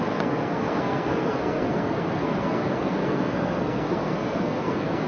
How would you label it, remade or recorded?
remade